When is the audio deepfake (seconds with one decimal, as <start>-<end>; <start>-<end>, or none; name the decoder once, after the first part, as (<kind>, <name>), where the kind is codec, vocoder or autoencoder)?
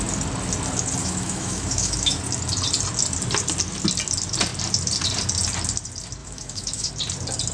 1.0-2.2 (autoencoder, DAC-VAE); 6.2-6.9